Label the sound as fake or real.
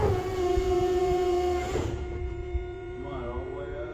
fake